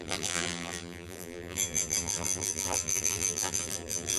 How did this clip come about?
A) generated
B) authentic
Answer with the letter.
A